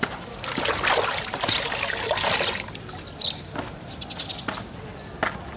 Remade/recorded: recorded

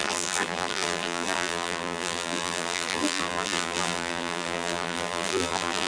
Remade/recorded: remade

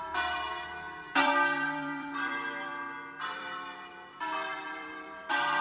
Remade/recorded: remade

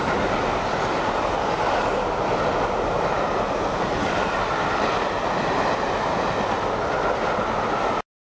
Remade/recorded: recorded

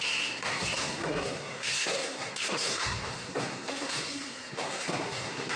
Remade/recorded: remade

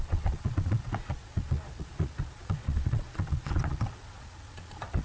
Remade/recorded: remade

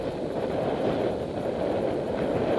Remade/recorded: recorded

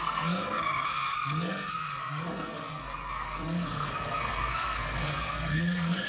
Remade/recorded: remade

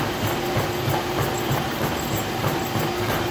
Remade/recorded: recorded